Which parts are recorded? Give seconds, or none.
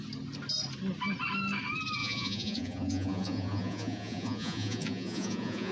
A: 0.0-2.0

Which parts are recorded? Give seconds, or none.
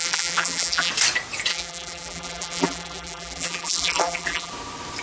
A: 0.9-1.5; 4.5-5.0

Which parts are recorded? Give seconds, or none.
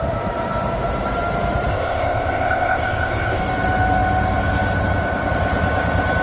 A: 0.0-1.7; 3.4-6.2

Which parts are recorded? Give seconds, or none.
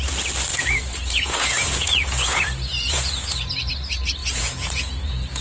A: 0.0-0.5; 3.7-4.2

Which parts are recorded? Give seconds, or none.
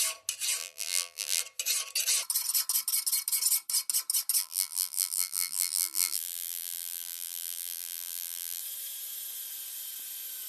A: 0.0-0.6; 1.4-4.4; 8.6-10.5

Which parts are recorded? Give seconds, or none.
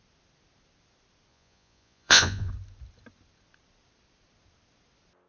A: 0.0-1.3; 2.5-5.3